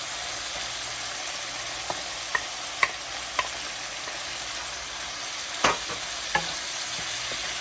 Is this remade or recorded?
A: recorded